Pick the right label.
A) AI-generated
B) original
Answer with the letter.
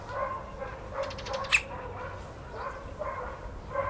B